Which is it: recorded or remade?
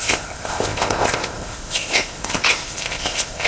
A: remade